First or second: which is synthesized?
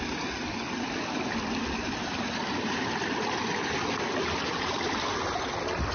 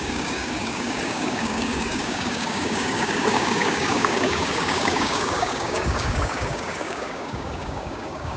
second